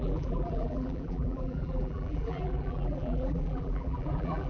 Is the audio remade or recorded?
remade